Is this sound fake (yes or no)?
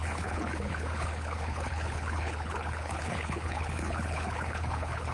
yes